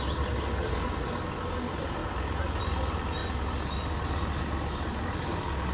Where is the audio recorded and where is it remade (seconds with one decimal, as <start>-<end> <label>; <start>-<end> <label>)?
0.0-2.0 recorded; 2.0-2.6 remade; 2.6-5.7 recorded